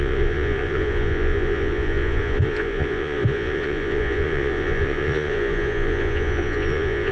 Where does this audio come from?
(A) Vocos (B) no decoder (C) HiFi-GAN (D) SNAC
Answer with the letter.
A